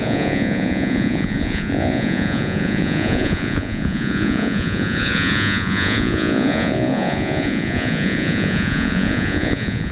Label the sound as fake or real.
fake